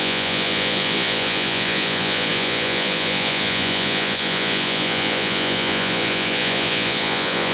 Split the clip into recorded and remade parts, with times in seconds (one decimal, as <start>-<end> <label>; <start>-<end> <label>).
0.0-7.5 remade

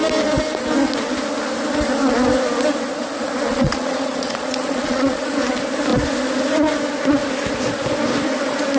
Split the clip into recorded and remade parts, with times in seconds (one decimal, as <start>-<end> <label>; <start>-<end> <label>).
0.0-3.5 recorded; 3.5-5.3 remade; 5.3-8.8 recorded